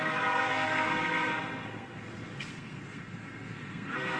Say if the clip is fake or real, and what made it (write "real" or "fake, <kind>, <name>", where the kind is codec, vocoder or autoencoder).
fake, codec, SNAC